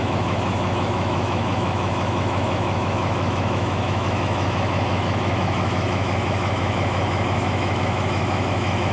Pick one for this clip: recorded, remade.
remade